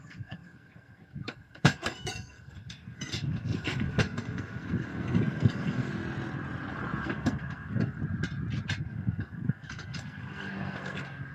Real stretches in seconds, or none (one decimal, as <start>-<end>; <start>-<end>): 5.9-7.0; 8.0-8.8